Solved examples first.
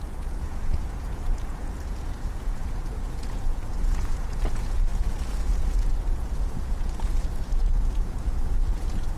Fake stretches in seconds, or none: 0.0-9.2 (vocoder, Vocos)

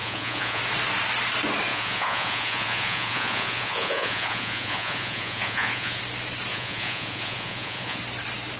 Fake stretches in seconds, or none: 0.0-0.6 (vocoder, Vocos); 1.7-6.0; 6.5-8.0

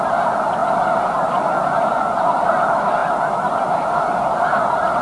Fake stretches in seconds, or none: 1.9-2.5 (vocoder, Vocos)